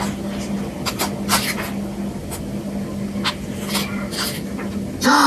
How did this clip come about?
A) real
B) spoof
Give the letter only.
A